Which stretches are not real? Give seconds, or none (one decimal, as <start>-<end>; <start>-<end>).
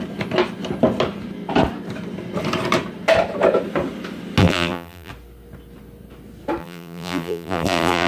4.4-5.1; 6.6-8.1